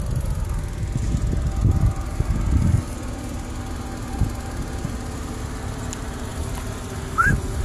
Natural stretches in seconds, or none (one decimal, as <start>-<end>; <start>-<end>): 0.0-7.6